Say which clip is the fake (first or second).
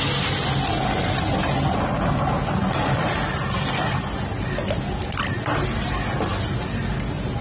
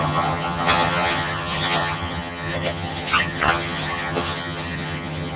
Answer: second